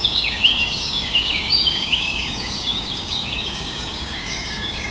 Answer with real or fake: fake